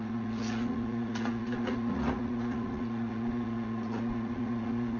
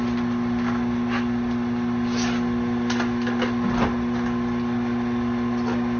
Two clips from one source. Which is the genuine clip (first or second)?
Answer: second